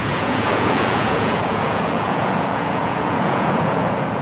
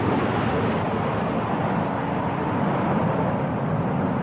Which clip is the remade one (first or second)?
first